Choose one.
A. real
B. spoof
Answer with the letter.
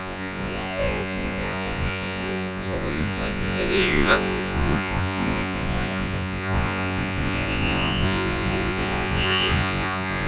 B